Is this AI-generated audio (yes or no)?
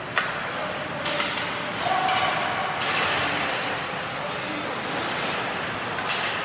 no